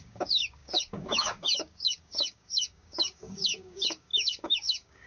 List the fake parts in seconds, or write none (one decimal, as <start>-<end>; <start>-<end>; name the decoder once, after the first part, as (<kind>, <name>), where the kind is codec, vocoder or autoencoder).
0.0-5.1 (codec, DAC)